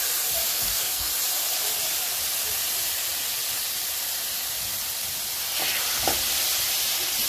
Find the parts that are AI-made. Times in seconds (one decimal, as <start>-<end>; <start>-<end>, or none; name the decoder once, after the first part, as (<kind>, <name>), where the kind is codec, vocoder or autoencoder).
0.5-1.1 (codec, SNAC)